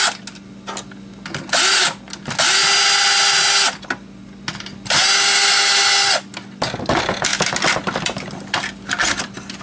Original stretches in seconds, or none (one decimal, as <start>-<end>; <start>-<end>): 0.0-9.6